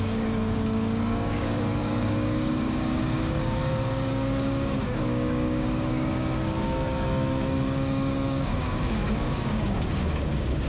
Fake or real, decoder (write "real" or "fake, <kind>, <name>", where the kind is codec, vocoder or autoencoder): fake, codec, DAC